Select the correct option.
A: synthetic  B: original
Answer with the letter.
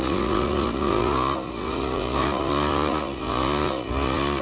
A